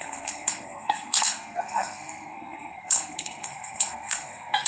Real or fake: fake